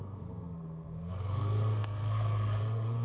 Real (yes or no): no